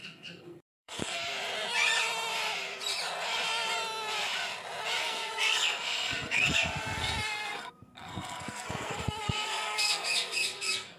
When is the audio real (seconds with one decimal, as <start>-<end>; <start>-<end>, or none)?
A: 1.2-5.0